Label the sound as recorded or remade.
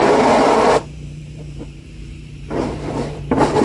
remade